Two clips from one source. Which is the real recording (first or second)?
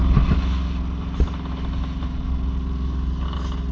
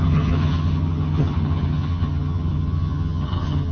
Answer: first